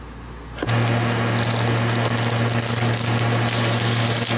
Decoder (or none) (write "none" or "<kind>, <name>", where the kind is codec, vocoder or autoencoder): none